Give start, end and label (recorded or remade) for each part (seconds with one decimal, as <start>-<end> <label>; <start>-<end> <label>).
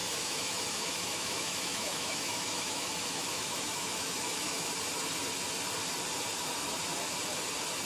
0.0-4.7 remade; 4.7-7.9 recorded